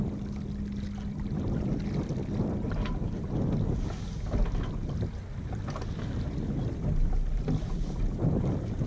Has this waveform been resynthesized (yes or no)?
no